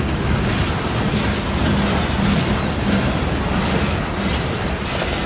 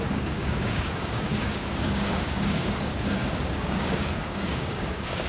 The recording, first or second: first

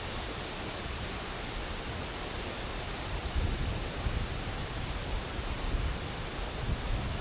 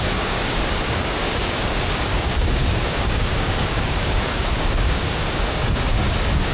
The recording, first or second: first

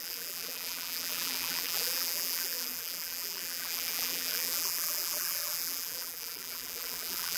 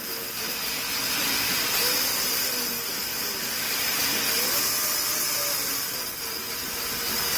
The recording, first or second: second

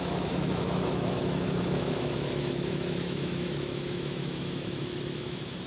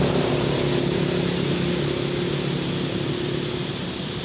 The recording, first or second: second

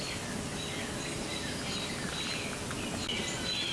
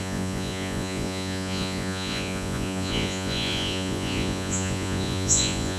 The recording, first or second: first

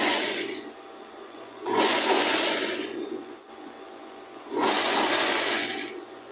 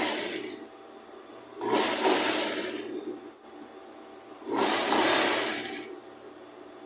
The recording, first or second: second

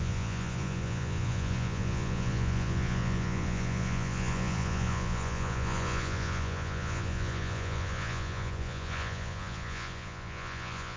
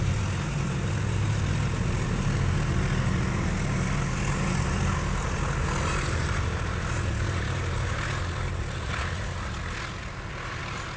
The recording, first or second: second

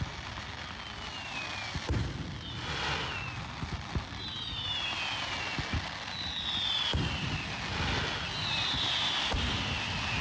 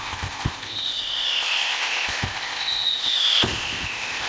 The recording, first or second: first